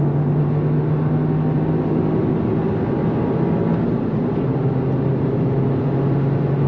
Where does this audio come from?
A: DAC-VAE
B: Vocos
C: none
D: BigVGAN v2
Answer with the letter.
C